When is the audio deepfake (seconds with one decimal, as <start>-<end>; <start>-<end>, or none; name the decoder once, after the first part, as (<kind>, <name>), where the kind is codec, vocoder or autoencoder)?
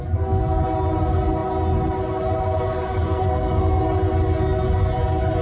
3.0-3.8 (codec, SNAC)